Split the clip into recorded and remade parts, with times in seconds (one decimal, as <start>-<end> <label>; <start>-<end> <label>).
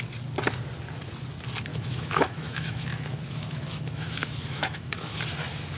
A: 0.0-1.7 recorded; 1.7-5.2 remade; 5.2-5.8 recorded